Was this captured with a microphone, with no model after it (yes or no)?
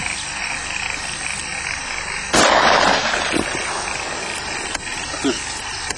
yes